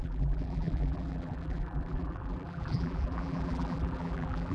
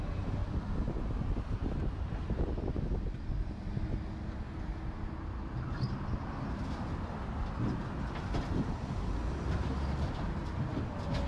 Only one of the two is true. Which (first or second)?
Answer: second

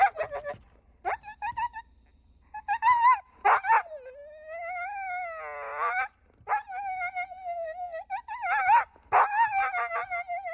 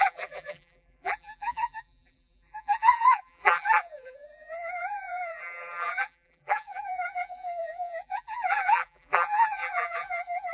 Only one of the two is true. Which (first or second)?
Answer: first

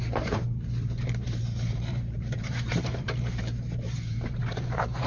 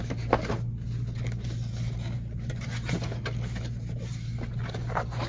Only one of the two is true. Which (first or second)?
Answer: second